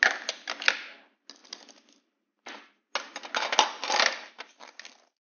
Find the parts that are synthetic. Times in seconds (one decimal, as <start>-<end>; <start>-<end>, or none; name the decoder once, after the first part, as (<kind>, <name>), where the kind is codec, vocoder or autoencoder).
none